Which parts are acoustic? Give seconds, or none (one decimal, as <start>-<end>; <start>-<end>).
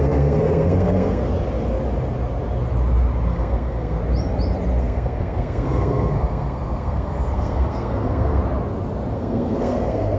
1.2-3.3; 4.0-4.8; 8.4-9.1